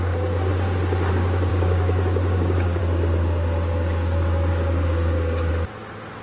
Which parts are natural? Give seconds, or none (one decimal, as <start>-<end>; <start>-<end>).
0.0-1.5; 2.8-4.5; 5.5-6.2